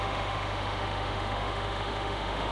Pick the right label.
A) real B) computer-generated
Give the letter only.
B